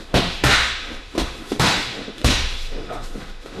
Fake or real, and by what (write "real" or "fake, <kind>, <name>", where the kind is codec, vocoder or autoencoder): fake, autoencoder, DAC-VAE